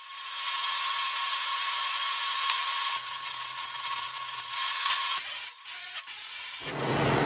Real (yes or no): no